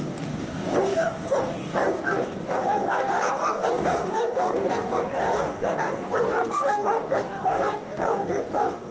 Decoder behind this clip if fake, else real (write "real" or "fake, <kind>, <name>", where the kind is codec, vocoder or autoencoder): fake, codec, DAC